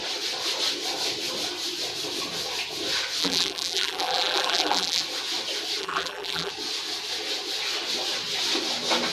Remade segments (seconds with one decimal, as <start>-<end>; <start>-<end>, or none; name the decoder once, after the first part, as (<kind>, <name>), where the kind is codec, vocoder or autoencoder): 3.2-5.0 (vocoder, BigVGAN v2); 5.8-6.5